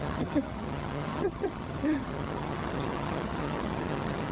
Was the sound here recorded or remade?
remade